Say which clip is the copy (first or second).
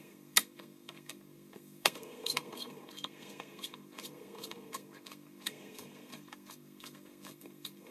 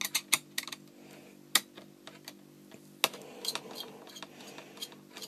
first